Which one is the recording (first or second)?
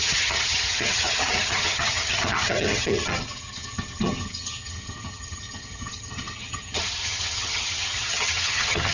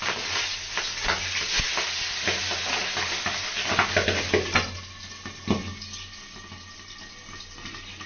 second